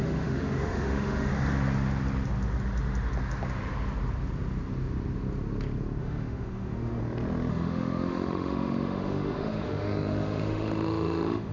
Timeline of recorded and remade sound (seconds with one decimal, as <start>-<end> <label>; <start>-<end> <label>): 0.0-1.3 remade; 1.3-6.0 recorded; 6.0-7.0 remade; 7.0-7.5 recorded; 7.5-11.5 remade